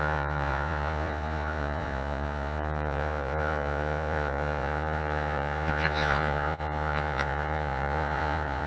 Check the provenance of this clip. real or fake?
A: fake